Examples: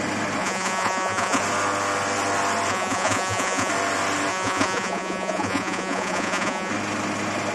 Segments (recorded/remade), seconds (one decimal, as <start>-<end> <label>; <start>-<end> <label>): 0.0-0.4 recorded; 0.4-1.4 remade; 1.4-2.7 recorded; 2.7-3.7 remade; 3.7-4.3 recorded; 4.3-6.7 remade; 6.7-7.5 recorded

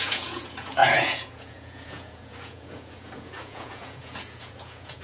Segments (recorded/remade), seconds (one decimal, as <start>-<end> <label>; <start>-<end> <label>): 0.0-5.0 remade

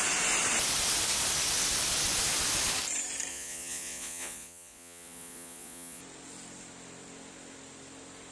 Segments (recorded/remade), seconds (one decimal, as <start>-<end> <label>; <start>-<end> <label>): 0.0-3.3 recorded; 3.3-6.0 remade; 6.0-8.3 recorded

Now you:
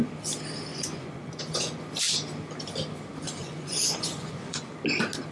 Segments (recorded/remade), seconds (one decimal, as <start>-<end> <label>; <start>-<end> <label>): 0.0-0.7 recorded; 0.7-1.8 remade; 1.8-3.4 recorded; 3.4-4.7 remade; 4.7-5.3 recorded

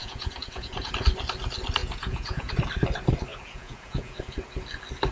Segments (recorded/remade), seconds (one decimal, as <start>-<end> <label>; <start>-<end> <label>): 0.0-0.9 remade; 0.9-1.8 recorded; 1.8-2.5 remade; 2.5-3.3 recorded; 3.3-4.2 remade; 4.2-5.1 recorded

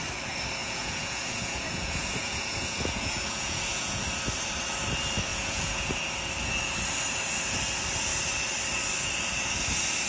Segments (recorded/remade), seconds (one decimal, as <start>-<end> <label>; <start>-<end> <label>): 0.0-0.6 recorded; 0.6-4.0 remade; 4.0-5.3 recorded; 5.3-6.0 remade; 6.0-10.1 recorded

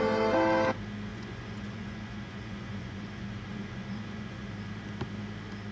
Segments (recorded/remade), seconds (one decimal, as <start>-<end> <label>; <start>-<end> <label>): 0.0-1.1 recorded; 1.1-4.5 remade; 4.5-5.7 recorded

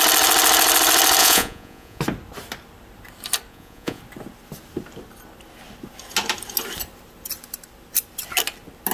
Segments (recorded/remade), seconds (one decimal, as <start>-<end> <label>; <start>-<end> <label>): 0.0-1.2 recorded; 1.2-2.0 remade; 2.0-3.5 recorded; 3.5-4.0 remade; 4.0-8.9 recorded